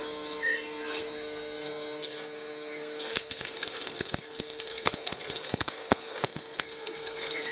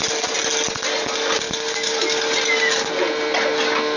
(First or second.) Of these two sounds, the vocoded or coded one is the first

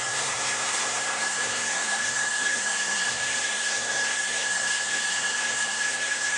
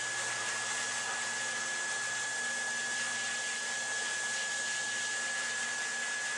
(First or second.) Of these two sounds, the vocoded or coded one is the first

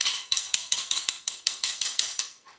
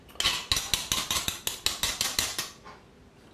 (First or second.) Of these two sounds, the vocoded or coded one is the first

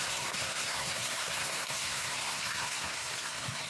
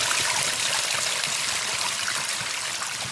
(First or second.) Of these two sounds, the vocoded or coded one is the first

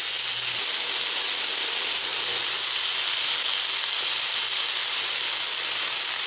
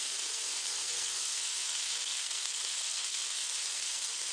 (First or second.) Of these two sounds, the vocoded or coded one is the second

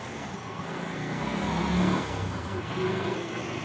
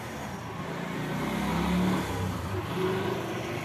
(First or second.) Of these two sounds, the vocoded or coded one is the first